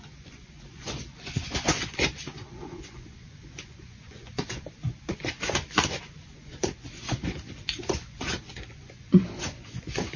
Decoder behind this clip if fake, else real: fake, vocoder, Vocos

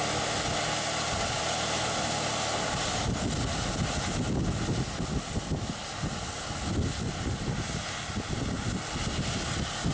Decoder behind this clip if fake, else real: real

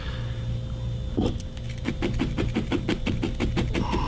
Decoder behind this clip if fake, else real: real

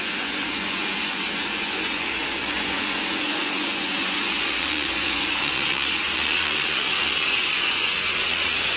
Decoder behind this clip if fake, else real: fake, vocoder, Vocos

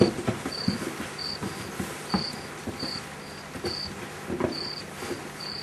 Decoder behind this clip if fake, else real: real